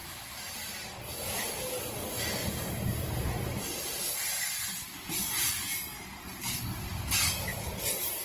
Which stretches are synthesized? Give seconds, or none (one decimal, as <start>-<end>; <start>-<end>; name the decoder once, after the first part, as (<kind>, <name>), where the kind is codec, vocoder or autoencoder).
2.4-4.0 (vocoder, BigVGAN v2)